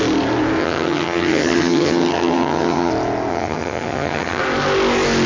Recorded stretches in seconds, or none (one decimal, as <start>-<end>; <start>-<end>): 0.0-0.6; 2.9-3.3; 4.4-5.3